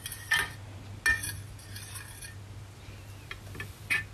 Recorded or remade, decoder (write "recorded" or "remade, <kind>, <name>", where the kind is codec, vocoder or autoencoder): recorded